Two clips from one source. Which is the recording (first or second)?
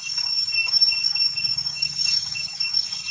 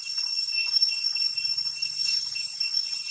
second